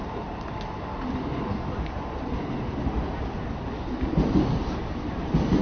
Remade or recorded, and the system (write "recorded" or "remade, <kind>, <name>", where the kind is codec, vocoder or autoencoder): recorded